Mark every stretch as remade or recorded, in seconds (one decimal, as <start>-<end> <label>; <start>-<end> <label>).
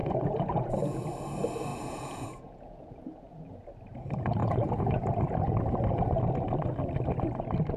0.0-1.0 remade; 1.0-1.7 recorded; 1.7-3.6 remade; 3.6-4.4 recorded; 4.4-5.2 remade; 5.2-7.8 recorded